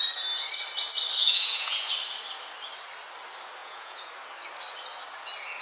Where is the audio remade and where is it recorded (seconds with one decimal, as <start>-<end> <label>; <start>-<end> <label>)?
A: 0.0-1.2 recorded; 1.2-1.9 remade; 1.9-3.6 recorded; 3.6-4.1 remade; 4.1-5.6 recorded